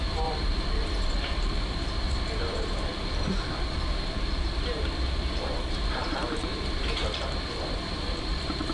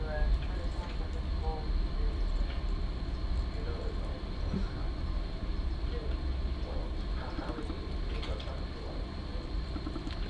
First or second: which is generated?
first